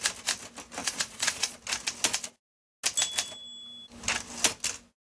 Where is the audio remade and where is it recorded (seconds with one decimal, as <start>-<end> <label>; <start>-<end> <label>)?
0.0-0.8 recorded; 0.8-1.6 remade; 1.6-5.1 recorded